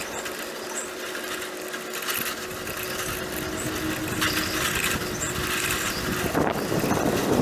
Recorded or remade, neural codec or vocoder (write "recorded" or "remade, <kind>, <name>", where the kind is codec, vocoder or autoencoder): recorded